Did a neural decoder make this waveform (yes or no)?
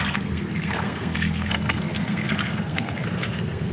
yes